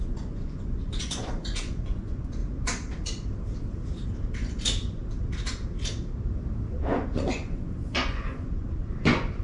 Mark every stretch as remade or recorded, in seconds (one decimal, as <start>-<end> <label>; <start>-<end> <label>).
0.0-2.4 remade; 2.4-6.7 recorded; 6.7-9.4 remade